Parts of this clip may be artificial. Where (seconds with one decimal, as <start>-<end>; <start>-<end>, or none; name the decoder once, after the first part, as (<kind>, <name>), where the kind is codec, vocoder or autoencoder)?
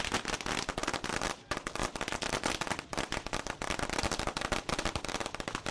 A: none